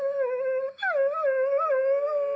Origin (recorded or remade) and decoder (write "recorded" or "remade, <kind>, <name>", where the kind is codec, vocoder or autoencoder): recorded